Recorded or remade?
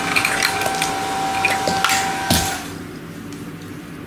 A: recorded